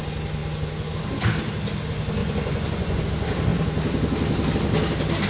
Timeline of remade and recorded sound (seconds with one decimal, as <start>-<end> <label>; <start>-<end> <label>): 0.0-2.2 recorded; 2.2-3.0 remade; 3.0-5.3 recorded